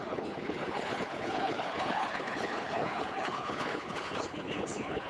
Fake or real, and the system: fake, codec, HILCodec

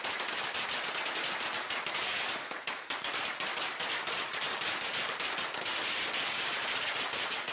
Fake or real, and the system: fake, vocoder, BigVGAN v2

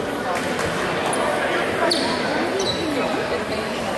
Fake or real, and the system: real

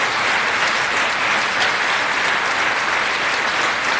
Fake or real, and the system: real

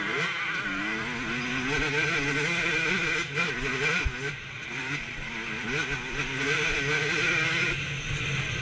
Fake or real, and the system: real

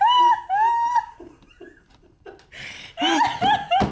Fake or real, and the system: real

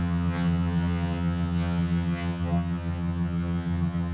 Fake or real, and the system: fake, vocoder, HiFi-GAN